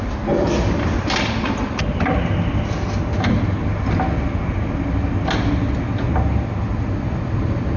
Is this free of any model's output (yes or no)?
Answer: yes